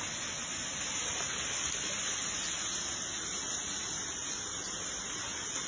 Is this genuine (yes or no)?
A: yes